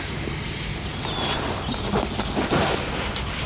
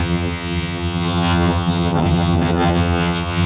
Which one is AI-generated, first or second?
second